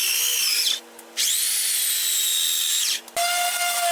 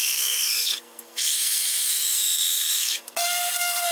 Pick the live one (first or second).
first